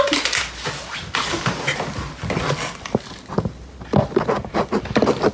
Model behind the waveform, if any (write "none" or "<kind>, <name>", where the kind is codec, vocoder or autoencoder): none